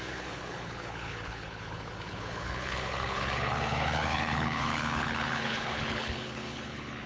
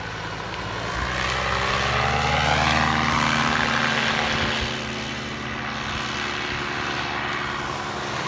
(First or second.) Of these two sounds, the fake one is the first